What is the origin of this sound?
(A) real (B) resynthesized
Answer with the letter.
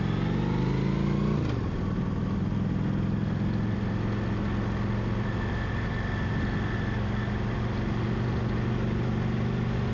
A